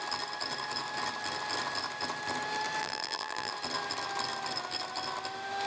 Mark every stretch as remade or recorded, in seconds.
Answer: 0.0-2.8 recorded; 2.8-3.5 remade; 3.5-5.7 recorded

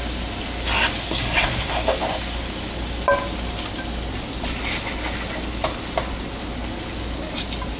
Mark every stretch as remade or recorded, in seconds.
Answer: 0.0-7.8 recorded

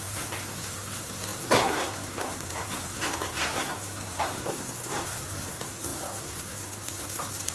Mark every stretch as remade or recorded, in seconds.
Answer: 0.0-7.5 remade

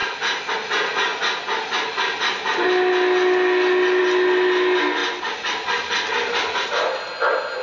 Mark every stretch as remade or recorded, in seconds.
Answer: 0.0-7.6 recorded

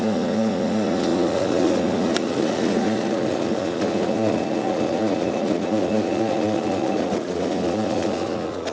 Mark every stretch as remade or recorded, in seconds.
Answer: 0.0-8.7 remade

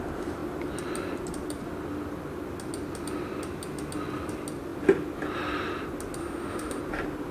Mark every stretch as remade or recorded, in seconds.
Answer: 0.0-6.2 recorded; 6.2-6.8 remade; 6.8-7.3 recorded